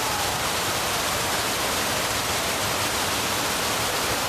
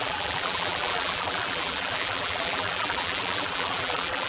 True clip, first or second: first